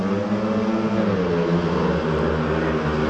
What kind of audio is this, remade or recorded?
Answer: recorded